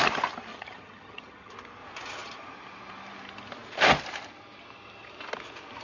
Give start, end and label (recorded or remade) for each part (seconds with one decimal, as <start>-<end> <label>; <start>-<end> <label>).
0.0-0.5 recorded; 0.5-1.5 remade; 1.5-5.8 recorded